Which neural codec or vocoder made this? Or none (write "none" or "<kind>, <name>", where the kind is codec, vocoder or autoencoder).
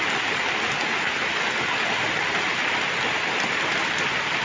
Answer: none